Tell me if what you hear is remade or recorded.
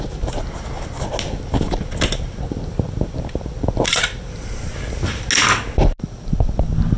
recorded